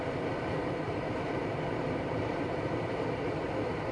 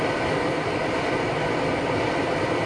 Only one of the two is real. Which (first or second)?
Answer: second